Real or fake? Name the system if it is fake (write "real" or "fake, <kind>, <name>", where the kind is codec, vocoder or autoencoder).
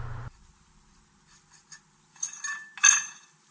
real